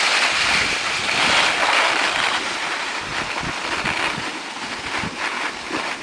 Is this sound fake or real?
real